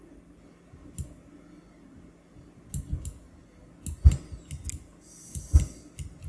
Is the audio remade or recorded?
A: recorded